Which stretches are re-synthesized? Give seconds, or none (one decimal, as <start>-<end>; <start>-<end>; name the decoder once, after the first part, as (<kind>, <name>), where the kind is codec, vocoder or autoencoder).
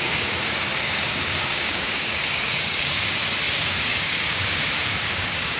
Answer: 0.0-3.2 (codec, DAC); 3.7-5.6